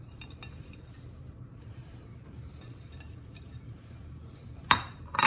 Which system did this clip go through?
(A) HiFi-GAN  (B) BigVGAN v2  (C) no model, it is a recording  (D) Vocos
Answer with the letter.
B